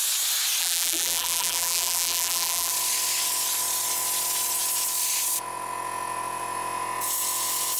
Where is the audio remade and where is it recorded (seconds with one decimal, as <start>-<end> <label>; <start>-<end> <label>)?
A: 0.0-0.6 recorded; 0.6-2.7 remade; 2.7-7.8 recorded